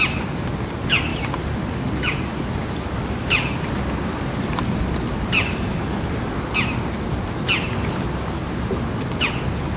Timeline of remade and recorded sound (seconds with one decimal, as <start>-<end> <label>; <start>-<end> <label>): 0.0-1.1 recorded; 1.1-4.8 remade; 4.8-9.8 recorded